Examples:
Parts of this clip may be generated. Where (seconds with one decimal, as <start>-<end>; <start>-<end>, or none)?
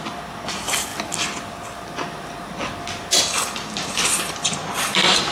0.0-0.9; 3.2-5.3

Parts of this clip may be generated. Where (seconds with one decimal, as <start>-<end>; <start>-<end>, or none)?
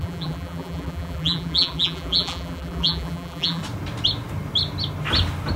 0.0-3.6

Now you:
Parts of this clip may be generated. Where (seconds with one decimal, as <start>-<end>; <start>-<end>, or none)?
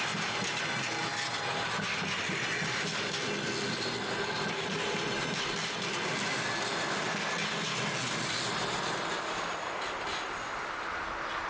none